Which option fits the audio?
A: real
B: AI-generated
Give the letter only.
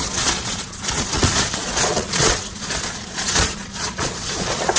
B